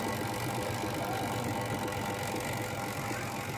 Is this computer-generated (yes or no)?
no